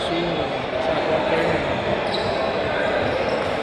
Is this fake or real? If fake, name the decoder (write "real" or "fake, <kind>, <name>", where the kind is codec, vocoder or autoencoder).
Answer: real